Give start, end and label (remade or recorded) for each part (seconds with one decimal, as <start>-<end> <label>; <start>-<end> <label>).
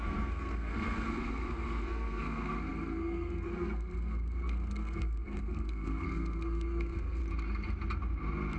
0.0-7.2 remade; 7.2-8.6 recorded